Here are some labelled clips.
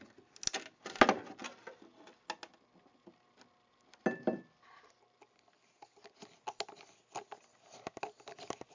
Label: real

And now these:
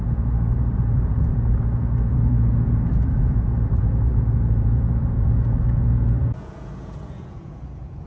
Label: fake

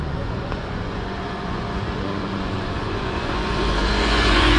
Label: fake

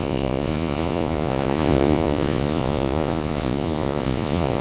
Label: fake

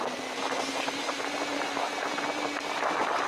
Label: real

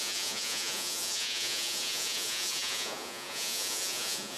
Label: fake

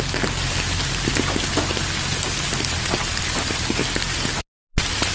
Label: real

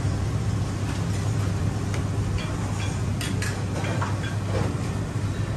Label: real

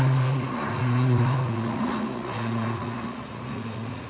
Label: fake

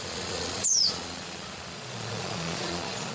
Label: fake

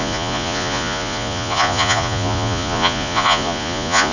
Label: fake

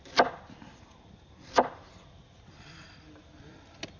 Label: real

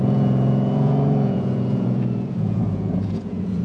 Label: fake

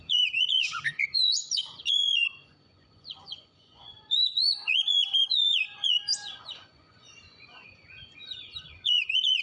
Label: fake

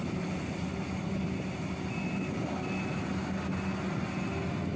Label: real